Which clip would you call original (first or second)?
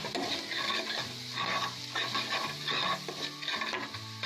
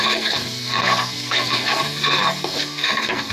first